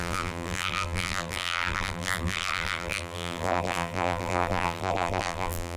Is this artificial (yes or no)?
yes